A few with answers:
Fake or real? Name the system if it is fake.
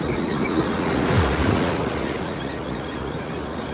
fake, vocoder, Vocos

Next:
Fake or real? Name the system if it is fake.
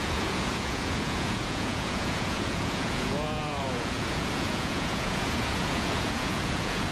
fake, vocoder, Vocos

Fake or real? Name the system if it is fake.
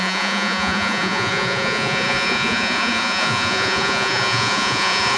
fake, vocoder, Vocos